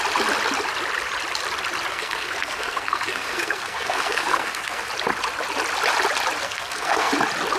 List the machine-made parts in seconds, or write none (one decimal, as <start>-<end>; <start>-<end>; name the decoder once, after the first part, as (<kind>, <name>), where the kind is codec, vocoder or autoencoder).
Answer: 1.9-4.9 (codec, SNAC); 6.4-7.1